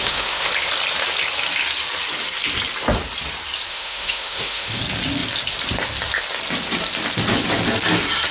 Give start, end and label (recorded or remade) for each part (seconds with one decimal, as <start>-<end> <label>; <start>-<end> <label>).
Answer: 0.0-0.5 remade; 0.5-3.7 recorded; 3.7-4.8 remade; 4.8-8.3 recorded